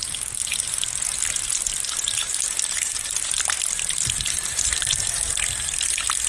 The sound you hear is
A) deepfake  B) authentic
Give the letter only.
B